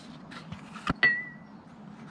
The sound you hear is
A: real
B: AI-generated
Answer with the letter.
A